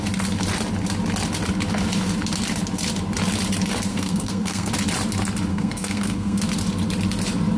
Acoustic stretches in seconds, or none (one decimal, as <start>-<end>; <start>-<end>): 0.0-3.9; 4.7-5.5; 6.4-7.6